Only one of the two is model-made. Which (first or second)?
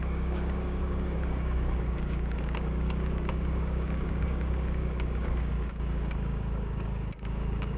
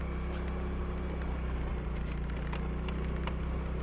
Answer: first